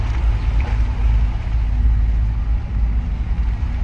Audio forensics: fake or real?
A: real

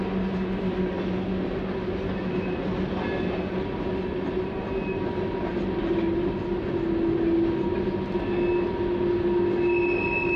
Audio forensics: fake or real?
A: real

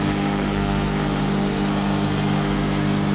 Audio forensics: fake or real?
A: fake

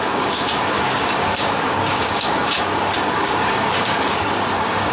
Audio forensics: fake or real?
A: fake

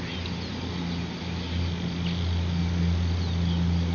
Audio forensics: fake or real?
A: real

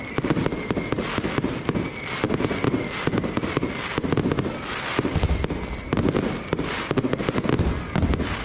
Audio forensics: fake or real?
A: real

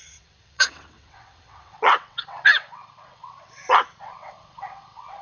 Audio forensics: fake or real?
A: fake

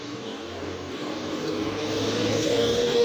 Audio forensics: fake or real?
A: fake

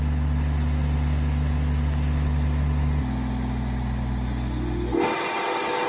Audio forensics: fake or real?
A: real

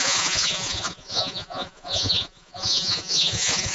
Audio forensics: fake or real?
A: fake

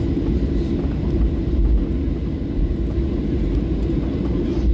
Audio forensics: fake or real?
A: real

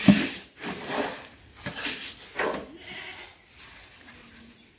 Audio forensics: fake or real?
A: real